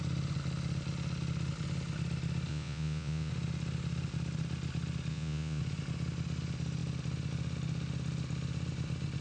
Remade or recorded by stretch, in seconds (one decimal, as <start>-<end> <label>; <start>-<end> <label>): 0.0-2.5 recorded; 2.5-3.3 remade; 3.3-5.1 recorded; 5.1-5.6 remade; 5.6-9.2 recorded